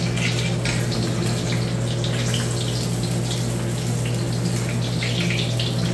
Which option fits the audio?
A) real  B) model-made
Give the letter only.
A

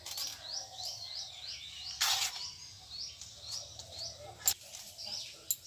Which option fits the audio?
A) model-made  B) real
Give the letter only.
B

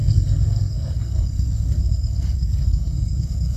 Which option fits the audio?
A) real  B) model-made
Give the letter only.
B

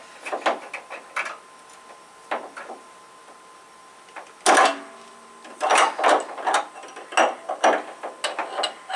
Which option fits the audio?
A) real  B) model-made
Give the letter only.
A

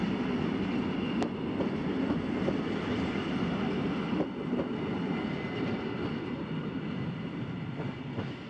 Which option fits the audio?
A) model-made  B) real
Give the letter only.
B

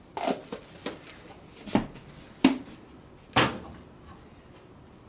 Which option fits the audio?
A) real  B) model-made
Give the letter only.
A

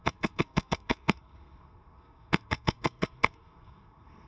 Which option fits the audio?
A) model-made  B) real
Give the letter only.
A